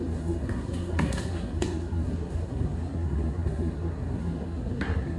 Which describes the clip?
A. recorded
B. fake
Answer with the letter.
B